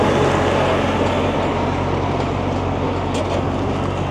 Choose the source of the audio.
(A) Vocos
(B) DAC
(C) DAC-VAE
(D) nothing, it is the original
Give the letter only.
D